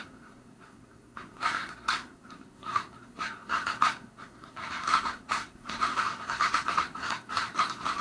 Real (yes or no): no